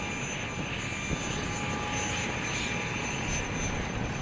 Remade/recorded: recorded